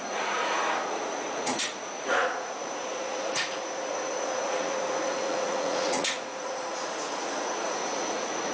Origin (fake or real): fake